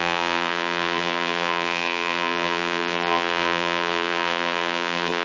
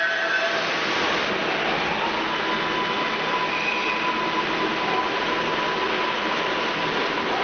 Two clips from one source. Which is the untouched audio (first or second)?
second